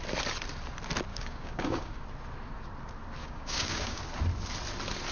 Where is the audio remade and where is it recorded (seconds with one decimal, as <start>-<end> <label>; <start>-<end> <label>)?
0.0-1.1 recorded; 1.1-2.0 remade; 2.0-3.2 recorded; 3.2-4.0 remade; 4.0-5.1 recorded